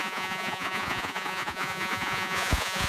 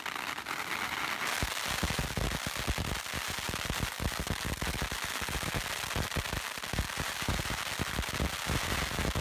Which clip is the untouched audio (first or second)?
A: second